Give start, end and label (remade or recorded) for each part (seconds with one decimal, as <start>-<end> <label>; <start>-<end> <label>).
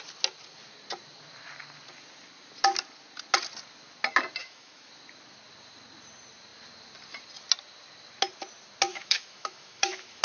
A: 0.0-4.4 recorded; 4.4-4.9 remade; 4.9-8.9 recorded; 8.9-10.2 remade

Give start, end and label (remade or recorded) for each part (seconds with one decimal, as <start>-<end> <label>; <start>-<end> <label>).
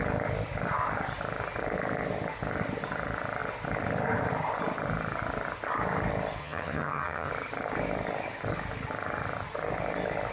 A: 0.0-6.4 recorded; 6.4-7.3 remade; 7.3-10.3 recorded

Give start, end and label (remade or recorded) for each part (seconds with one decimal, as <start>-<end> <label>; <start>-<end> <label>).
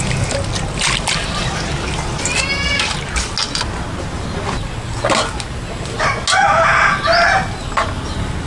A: 0.0-8.5 recorded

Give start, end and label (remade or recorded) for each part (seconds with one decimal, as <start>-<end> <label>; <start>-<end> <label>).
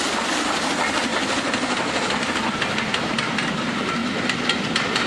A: 0.0-5.1 recorded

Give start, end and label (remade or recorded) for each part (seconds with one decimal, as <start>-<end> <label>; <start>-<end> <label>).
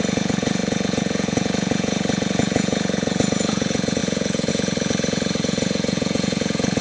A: 0.0-6.8 remade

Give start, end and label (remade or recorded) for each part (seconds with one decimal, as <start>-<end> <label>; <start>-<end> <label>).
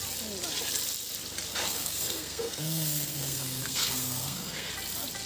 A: 0.0-1.5 recorded; 1.5-4.7 remade; 4.7-5.3 recorded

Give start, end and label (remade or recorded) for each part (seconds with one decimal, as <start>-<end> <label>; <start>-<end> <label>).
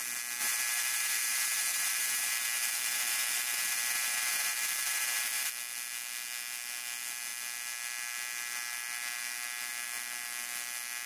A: 0.0-0.4 recorded; 0.4-5.5 remade; 5.5-11.1 recorded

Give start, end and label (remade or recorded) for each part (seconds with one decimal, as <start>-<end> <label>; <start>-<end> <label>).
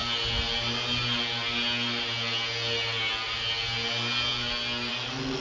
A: 0.0-5.4 recorded